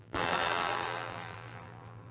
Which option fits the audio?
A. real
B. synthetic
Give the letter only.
B